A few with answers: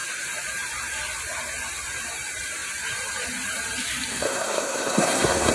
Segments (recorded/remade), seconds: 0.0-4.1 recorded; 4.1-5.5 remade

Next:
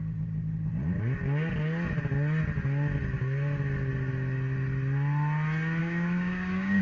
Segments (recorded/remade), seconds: 0.0-5.8 recorded; 5.8-6.8 remade

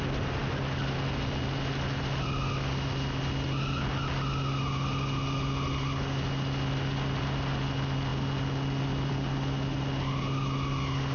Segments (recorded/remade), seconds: 0.0-11.1 recorded

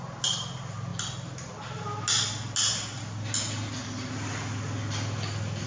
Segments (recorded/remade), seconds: 0.0-5.7 recorded

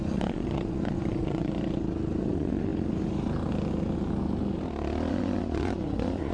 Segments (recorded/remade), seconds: 0.0-1.5 remade; 1.5-2.2 recorded; 2.2-2.7 remade; 2.7-5.1 recorded; 5.1-6.3 remade